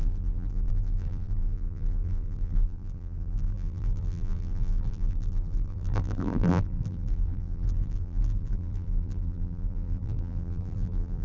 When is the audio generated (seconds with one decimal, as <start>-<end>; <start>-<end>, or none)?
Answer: 0.0-11.2